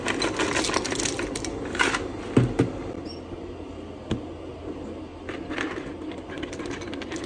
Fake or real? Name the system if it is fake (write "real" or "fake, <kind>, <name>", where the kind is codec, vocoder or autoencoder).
real